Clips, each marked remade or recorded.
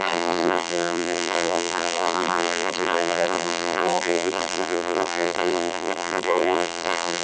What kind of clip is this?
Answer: remade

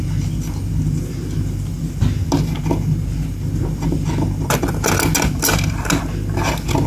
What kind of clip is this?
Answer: recorded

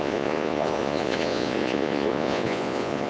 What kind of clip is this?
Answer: remade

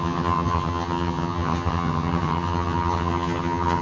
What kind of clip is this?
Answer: remade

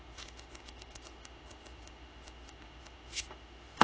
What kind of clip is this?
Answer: remade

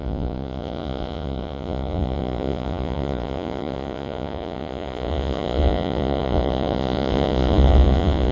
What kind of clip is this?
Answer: remade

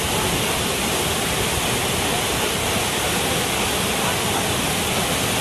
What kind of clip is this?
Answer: recorded